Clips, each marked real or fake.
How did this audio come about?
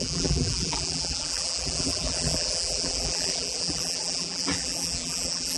fake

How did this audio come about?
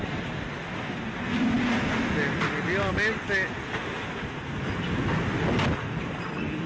real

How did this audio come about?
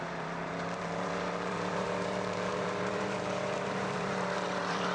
fake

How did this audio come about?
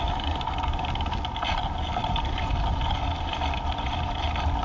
real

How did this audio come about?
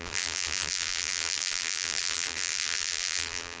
fake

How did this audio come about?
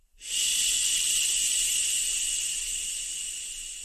fake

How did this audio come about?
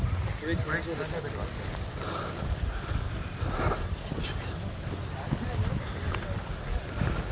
real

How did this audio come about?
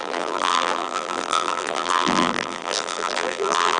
fake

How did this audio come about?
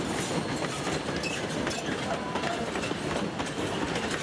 real